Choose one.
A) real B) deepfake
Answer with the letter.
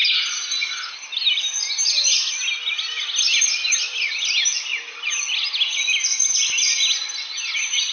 A